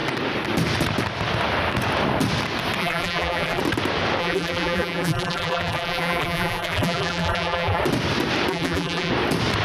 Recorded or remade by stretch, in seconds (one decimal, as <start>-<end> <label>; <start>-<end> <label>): 0.0-2.8 recorded; 2.8-3.6 remade; 3.6-4.2 recorded; 4.2-7.8 remade; 7.8-8.5 recorded; 8.5-9.1 remade; 9.1-9.6 recorded